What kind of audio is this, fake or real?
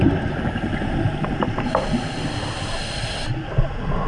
real